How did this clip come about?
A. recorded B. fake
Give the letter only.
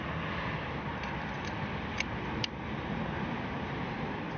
A